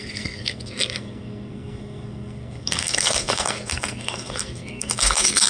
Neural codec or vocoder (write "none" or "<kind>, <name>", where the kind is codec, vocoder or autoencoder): codec, SNAC